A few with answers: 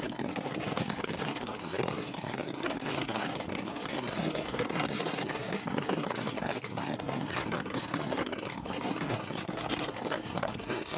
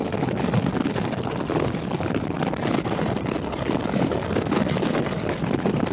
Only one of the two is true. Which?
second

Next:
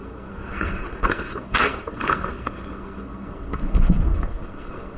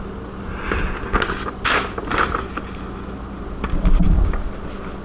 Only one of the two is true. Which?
second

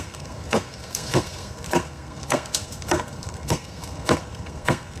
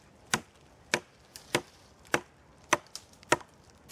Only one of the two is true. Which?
second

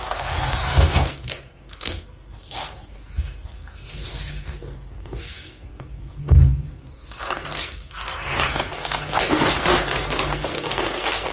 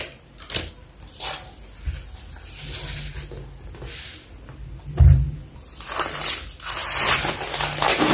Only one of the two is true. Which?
second